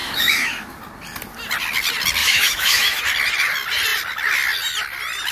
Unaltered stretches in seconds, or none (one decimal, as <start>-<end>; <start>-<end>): 0.8-2.2; 3.0-5.3